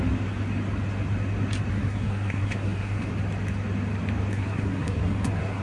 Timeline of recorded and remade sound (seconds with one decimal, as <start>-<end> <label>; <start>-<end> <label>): 0.0-1.7 recorded; 1.7-3.1 remade; 3.1-4.3 recorded; 4.3-5.6 remade